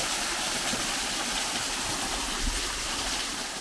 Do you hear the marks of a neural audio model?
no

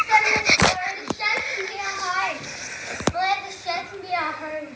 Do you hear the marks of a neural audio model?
no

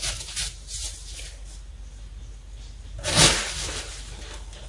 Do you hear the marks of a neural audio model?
no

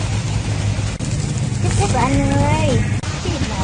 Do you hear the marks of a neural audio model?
no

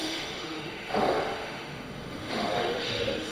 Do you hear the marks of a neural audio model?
yes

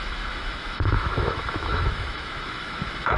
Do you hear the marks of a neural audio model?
yes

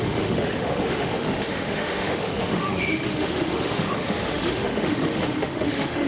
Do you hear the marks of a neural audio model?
yes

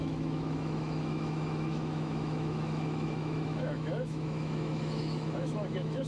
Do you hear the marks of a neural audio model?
yes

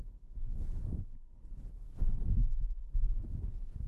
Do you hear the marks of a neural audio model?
no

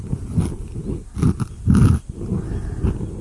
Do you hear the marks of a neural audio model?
no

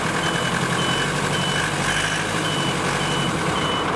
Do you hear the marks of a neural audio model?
no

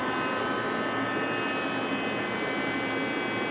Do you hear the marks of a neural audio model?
no